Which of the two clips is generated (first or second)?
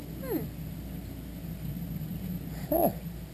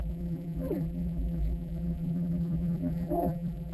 second